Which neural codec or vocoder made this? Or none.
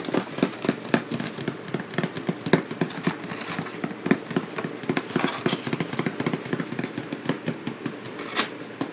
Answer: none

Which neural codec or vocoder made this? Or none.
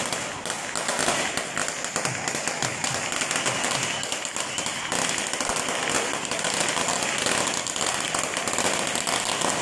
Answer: none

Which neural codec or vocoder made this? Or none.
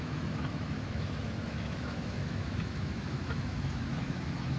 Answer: autoencoder, DAC-VAE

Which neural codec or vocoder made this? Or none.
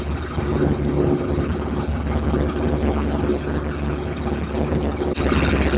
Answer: none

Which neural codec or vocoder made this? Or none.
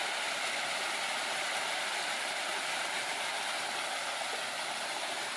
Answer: none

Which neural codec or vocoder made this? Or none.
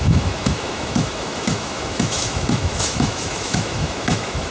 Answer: autoencoder, DAC-VAE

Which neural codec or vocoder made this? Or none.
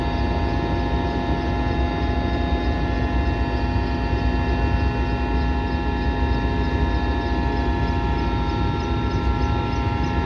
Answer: none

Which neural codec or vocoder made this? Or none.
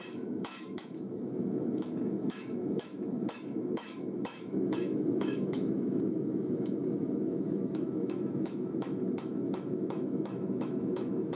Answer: autoencoder, DAC-VAE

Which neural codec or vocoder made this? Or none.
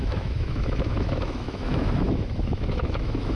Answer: autoencoder, DAC-VAE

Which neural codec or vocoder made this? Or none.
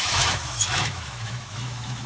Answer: autoencoder, DAC-VAE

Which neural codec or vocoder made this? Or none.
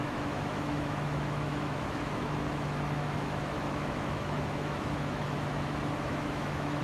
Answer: autoencoder, DAC-VAE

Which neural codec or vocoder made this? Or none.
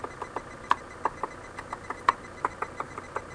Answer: none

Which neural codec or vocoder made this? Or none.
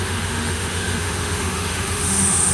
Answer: autoencoder, DAC-VAE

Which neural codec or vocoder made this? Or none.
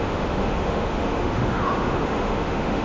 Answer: autoencoder, DAC-VAE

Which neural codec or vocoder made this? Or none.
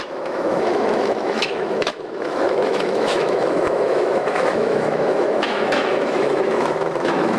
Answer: autoencoder, DAC-VAE